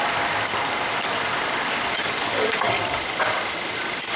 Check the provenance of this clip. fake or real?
real